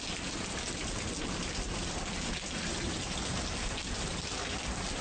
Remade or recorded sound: recorded